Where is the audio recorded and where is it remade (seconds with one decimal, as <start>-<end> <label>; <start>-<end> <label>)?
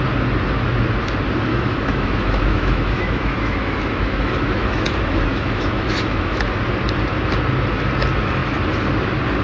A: 0.0-1.5 recorded; 1.5-6.6 remade; 6.6-9.4 recorded